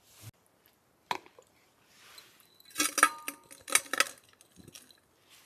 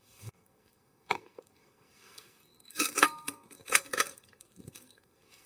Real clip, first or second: first